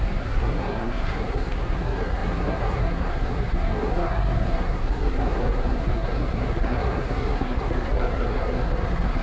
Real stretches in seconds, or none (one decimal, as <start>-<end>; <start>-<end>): none